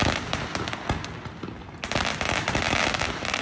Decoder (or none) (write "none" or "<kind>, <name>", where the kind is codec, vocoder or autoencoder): none